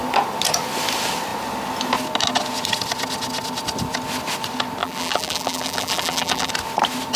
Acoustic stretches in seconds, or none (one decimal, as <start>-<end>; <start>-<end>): 0.0-4.8; 6.5-7.2